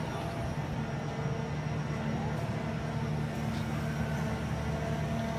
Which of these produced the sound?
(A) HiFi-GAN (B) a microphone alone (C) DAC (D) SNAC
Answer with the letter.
B